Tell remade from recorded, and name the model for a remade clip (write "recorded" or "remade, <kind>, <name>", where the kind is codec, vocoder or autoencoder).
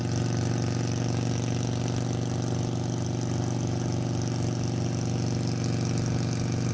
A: recorded